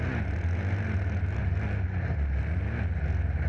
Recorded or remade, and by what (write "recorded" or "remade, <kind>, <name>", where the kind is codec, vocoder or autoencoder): recorded